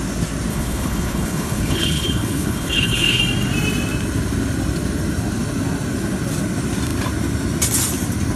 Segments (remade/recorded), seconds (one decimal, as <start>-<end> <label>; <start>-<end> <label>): 0.0-0.5 recorded; 0.5-3.2 remade; 3.2-8.4 recorded